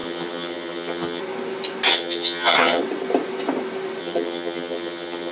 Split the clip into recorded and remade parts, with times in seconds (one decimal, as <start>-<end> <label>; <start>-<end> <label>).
0.0-1.2 remade; 1.2-1.9 recorded; 1.9-2.8 remade; 2.8-4.0 recorded; 4.0-5.3 remade